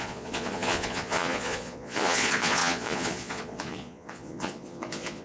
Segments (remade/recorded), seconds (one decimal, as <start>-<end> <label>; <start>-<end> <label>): 0.0-5.2 remade